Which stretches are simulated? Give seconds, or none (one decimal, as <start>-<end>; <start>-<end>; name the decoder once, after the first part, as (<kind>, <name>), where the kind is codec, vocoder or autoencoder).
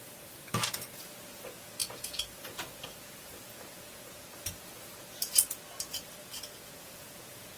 0.0-5.6 (vocoder, Vocos); 6.1-7.6